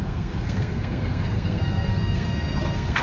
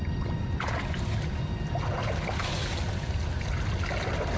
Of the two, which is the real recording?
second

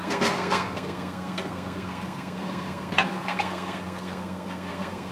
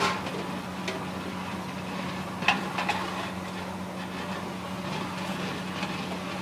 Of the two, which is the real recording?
second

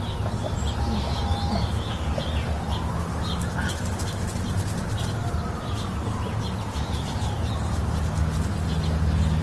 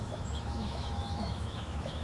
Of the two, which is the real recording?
first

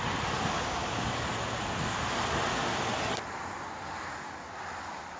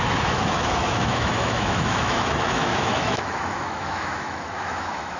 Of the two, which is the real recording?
first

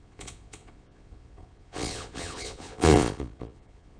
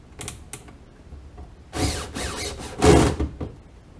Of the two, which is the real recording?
second